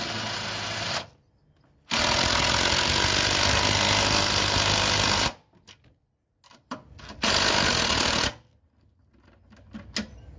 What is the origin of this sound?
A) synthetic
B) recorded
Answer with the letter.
B